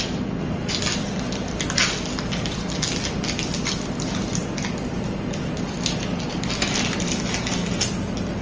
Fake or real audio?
real